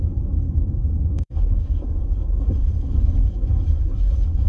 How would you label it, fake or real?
fake